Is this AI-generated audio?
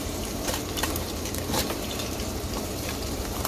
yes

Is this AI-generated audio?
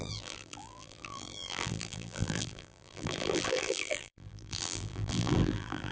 yes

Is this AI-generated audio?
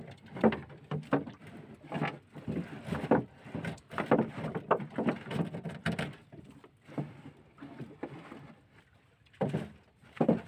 no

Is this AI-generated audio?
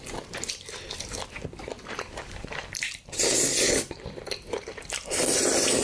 yes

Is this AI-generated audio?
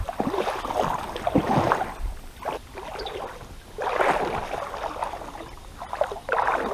no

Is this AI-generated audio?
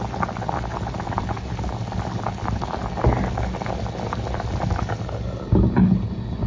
no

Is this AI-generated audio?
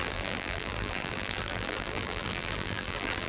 yes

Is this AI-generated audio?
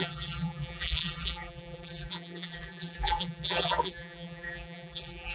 yes